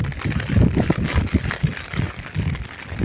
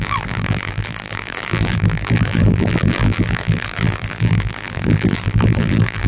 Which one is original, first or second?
first